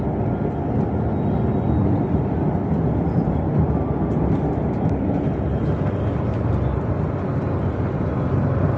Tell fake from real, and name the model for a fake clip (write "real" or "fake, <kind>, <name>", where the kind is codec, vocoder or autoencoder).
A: real